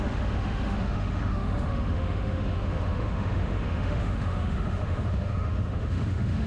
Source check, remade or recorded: remade